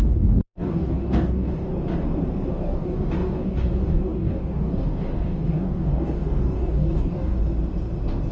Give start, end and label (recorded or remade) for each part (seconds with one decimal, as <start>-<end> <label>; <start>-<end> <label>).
0.0-1.7 remade; 1.7-2.5 recorded; 2.5-7.4 remade; 7.4-8.3 recorded